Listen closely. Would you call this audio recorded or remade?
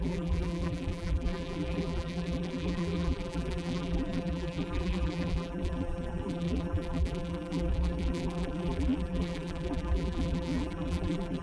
remade